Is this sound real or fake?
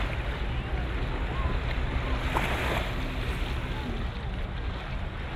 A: real